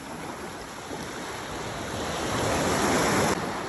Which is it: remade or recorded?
recorded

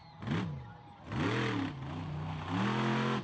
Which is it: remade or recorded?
recorded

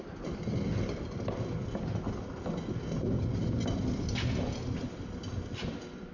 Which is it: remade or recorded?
recorded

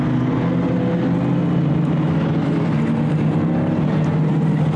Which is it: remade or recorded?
recorded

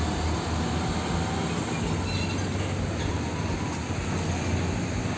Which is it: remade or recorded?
recorded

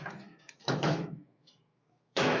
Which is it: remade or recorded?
remade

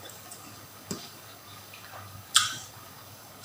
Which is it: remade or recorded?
remade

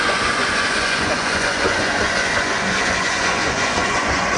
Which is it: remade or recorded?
remade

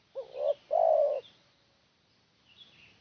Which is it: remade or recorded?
recorded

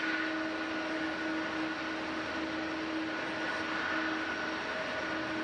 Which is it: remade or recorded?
recorded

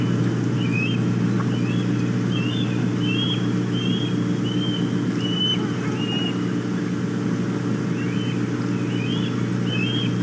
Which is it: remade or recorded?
recorded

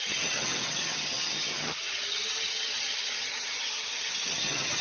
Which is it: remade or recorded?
remade